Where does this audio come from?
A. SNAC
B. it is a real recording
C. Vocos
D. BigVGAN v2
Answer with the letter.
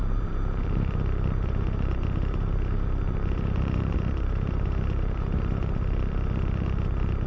D